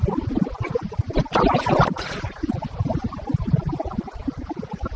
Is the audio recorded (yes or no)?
yes